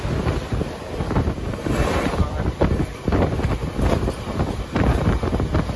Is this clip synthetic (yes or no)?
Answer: no